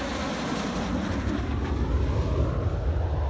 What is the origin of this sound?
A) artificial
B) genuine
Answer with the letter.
B